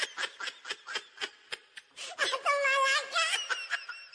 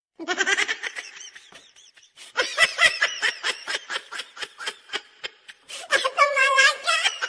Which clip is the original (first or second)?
first